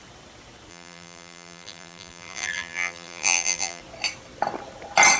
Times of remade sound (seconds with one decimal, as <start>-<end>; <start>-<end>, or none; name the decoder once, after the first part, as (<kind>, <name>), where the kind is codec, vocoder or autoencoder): 0.7-3.8 (vocoder, BigVGAN v2)